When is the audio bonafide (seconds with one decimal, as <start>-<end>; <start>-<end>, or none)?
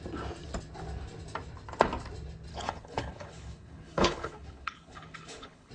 0.0-2.5